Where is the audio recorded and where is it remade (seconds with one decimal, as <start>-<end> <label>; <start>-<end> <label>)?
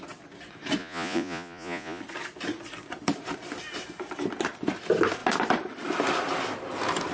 0.0-0.8 recorded; 0.8-2.0 remade; 2.0-7.1 recorded